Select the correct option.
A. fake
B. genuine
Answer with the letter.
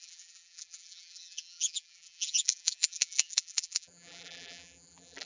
A